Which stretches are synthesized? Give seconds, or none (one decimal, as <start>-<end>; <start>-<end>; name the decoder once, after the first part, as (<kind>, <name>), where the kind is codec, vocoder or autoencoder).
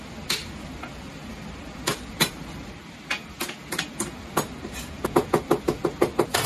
none